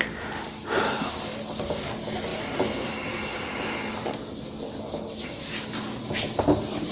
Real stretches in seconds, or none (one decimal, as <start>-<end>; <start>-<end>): 0.0-6.9